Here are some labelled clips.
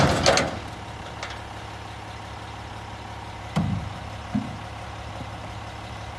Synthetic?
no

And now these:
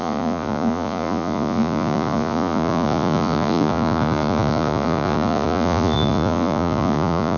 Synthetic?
yes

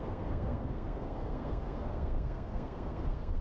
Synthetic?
yes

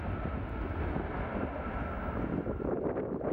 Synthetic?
no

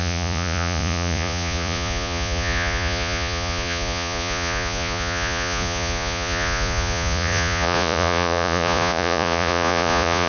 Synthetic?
yes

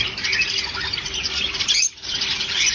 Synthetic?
yes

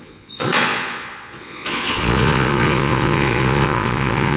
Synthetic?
yes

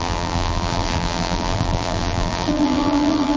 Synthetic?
yes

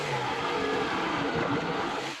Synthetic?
no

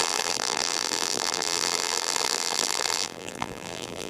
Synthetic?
yes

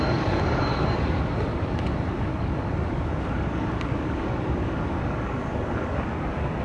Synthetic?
yes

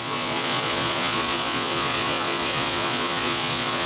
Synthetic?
yes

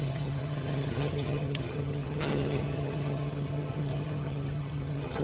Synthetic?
yes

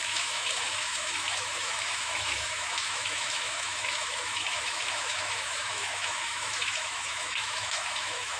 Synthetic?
yes